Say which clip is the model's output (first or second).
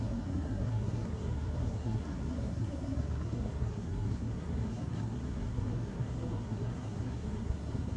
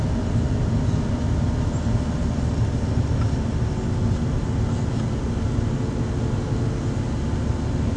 first